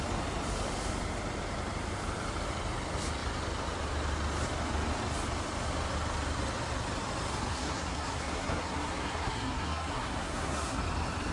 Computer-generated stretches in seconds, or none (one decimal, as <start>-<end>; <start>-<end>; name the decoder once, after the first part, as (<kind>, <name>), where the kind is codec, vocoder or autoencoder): 7.5-10.8 (codec, SNAC)